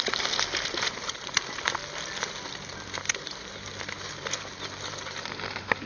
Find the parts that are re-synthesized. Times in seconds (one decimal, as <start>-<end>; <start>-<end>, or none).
none